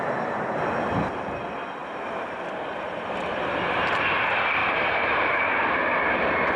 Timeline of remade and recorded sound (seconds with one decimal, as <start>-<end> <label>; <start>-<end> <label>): 0.0-1.8 recorded; 1.8-2.6 remade; 2.6-4.6 recorded; 4.6-5.5 remade; 5.5-6.6 recorded